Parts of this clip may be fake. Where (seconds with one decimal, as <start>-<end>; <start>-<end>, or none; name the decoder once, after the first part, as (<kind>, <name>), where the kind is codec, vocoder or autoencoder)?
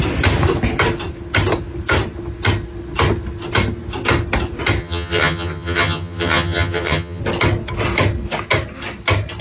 4.8-7.2 (vocoder, HiFi-GAN)